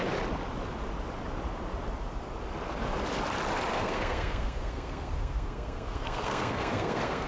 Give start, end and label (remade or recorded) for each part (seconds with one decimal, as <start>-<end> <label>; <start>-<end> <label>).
0.0-3.7 recorded; 3.7-7.3 remade